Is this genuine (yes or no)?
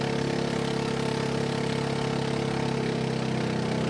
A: yes